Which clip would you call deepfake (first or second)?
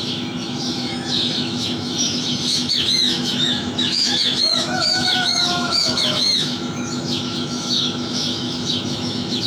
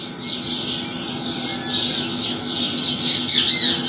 first